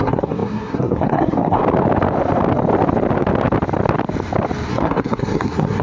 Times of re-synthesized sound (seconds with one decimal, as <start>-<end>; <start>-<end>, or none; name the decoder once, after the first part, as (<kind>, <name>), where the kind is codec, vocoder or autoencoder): 0.0-1.6 (codec, SNAC); 4.7-5.8